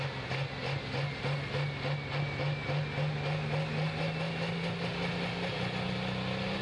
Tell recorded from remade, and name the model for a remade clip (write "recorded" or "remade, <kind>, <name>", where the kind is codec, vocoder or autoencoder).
recorded